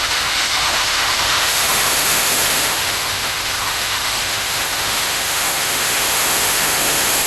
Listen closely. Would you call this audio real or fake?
fake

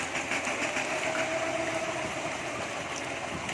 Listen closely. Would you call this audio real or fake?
real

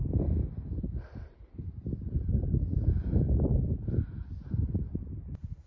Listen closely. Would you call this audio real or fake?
real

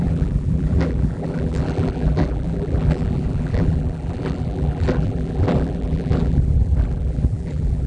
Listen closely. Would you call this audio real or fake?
fake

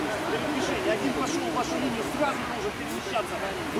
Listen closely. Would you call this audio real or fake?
real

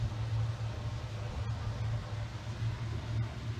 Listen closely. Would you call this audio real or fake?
real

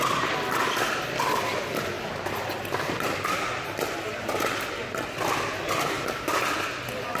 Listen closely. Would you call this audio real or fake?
real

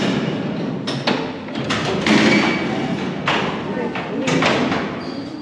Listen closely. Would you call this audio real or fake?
real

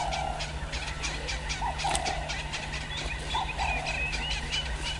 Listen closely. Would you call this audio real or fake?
real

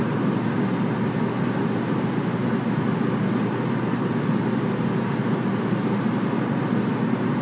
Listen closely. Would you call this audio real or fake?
real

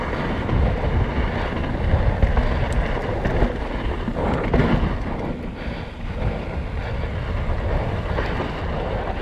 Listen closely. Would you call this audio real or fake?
real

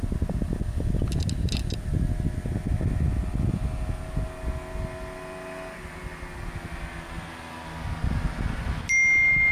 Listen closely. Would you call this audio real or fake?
real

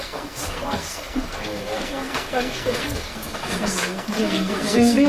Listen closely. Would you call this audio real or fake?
fake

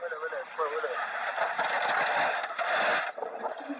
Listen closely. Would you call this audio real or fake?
real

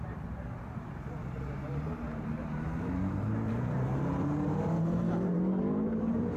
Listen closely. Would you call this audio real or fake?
fake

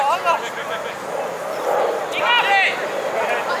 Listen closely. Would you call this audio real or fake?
real